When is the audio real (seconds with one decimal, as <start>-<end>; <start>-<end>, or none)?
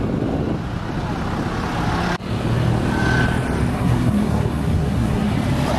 0.0-3.7; 5.3-5.8